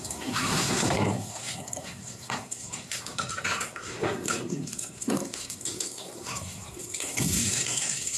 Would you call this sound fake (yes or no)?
yes